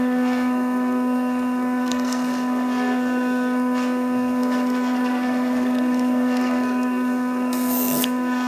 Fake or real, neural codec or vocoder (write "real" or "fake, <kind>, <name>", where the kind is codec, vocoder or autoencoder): fake, codec, SNAC